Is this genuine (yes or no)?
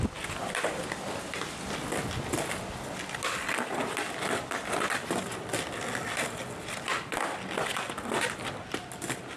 yes